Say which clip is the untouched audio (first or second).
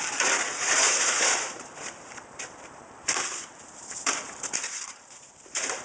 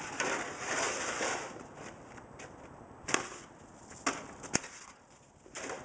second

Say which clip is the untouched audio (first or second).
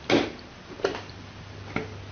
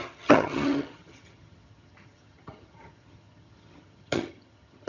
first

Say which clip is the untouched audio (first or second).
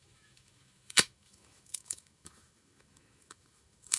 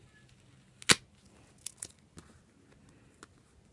second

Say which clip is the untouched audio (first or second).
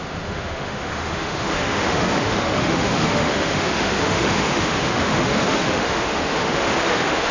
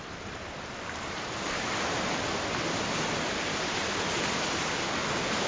second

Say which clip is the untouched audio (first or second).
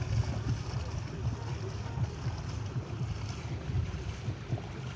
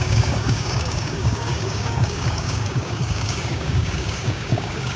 first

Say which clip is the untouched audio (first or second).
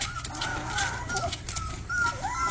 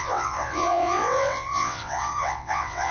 first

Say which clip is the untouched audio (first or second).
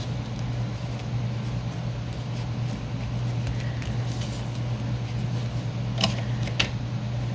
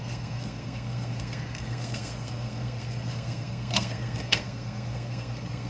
first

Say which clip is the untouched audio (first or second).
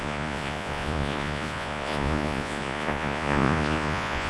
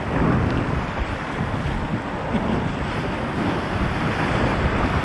second